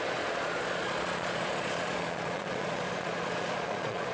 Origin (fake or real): fake